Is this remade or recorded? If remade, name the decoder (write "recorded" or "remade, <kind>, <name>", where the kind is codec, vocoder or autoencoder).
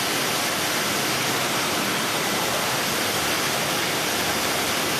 recorded